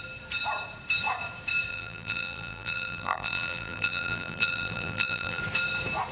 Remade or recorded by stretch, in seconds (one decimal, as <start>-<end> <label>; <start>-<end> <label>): 0.0-1.7 recorded; 1.7-5.4 remade; 5.4-6.1 recorded